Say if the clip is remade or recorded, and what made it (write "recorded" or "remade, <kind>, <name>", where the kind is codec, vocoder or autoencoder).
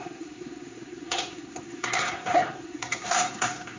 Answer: remade, codec, SNAC